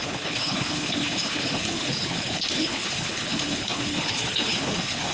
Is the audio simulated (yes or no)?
yes